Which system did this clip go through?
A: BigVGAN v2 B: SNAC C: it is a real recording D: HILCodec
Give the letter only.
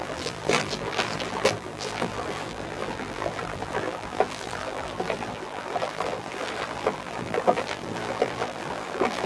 A